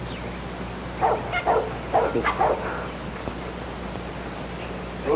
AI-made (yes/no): no